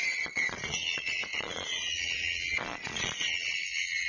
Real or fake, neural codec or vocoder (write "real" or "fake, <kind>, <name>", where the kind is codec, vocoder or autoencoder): fake, vocoder, Vocos